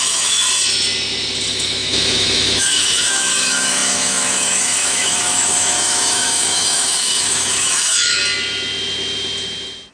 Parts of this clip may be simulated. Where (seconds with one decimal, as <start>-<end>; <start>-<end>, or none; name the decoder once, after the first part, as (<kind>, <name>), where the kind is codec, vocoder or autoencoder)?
0.0-0.4 (autoencoder, DAC-VAE); 1.5-8.2